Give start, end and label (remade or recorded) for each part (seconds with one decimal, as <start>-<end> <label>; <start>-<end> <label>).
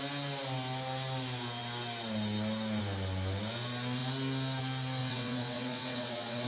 0.0-5.0 recorded; 5.0-6.5 remade